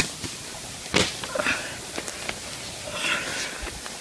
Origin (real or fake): real